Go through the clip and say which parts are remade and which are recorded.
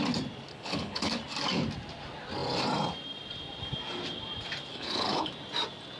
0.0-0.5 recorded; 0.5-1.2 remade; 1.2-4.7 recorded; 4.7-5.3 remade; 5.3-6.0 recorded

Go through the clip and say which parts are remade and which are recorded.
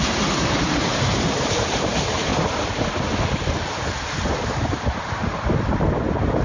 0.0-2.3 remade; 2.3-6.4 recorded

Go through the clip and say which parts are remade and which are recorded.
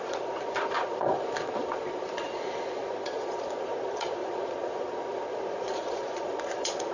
0.0-6.9 remade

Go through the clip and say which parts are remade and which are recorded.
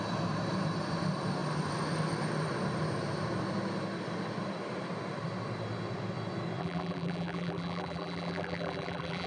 0.0-6.6 recorded; 6.6-9.3 remade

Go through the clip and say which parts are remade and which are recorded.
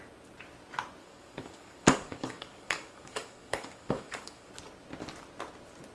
0.0-1.0 recorded; 1.0-4.5 remade; 4.5-5.9 recorded